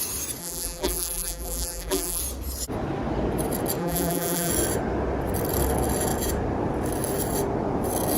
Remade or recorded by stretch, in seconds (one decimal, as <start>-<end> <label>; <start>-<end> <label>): 0.0-0.4 recorded; 0.4-2.2 remade; 2.2-3.8 recorded; 3.8-4.5 remade; 4.5-8.2 recorded

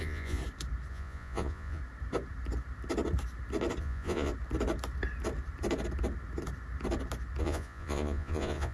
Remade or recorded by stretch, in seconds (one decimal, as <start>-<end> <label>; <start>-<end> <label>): 0.0-0.4 remade; 0.4-0.9 recorded; 0.9-1.8 remade; 1.8-3.8 recorded; 3.8-4.3 remade; 4.3-7.4 recorded; 7.4-8.7 remade